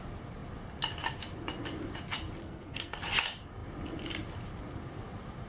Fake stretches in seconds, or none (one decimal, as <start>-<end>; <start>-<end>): 2.4-3.0

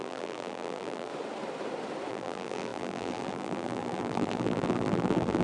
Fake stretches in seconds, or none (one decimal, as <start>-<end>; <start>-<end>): 0.0-1.1; 2.1-5.4

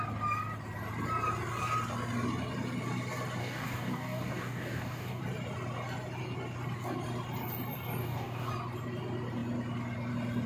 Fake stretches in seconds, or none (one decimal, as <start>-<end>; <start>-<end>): 3.4-5.2; 8.0-8.5

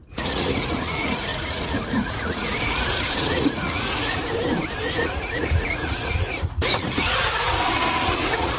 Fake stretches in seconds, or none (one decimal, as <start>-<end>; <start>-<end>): 0.0-4.2; 4.8-8.6

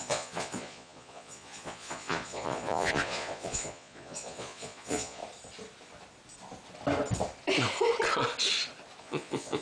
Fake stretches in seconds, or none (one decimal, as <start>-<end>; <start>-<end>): 0.0-5.2; 9.0-9.6

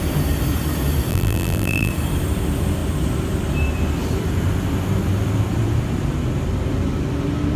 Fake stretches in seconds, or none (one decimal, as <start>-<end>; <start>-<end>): 1.1-1.9

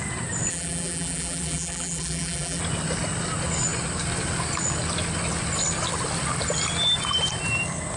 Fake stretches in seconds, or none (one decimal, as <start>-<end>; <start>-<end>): 0.5-2.6

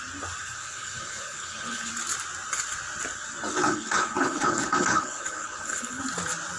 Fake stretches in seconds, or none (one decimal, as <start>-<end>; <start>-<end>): 0.4-1.9; 3.5-6.0